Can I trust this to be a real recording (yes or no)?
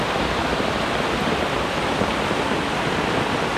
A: no